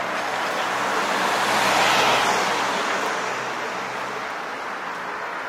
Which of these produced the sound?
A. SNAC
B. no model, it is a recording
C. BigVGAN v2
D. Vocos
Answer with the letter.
B